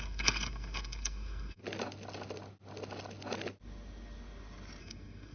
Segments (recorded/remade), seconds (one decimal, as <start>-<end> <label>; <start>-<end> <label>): 0.0-1.6 remade; 1.6-4.8 recorded; 4.8-5.3 remade